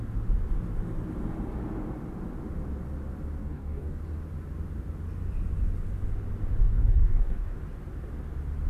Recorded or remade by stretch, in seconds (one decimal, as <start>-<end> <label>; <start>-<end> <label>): 0.0-3.4 recorded; 3.4-4.0 remade; 4.0-6.6 recorded; 6.6-7.6 remade; 7.6-8.7 recorded